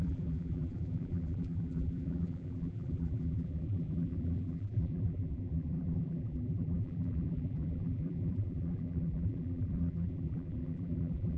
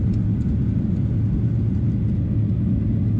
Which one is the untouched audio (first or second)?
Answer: second